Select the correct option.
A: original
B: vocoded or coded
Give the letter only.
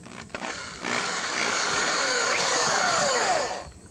B